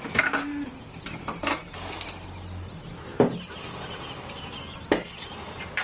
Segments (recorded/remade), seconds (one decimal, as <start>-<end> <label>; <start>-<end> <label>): 0.0-5.8 recorded